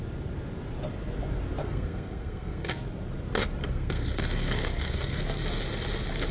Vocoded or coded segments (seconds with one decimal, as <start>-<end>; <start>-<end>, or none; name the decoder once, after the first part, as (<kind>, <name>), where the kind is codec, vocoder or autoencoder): 1.6-2.7 (codec, SNAC); 3.6-5.2